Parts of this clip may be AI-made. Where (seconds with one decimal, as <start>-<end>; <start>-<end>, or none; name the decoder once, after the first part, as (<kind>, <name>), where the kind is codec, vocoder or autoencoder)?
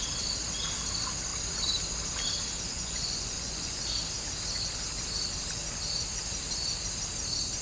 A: 2.7-3.8 (vocoder, Vocos)